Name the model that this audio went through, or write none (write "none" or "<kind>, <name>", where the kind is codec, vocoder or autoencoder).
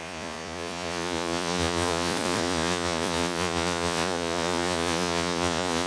vocoder, Vocos